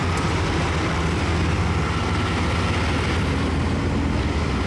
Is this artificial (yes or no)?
no